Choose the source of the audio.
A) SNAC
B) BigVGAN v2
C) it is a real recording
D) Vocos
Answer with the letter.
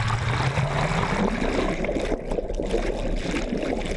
C